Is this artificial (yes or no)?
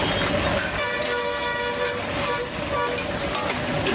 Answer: no